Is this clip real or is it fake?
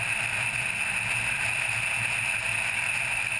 real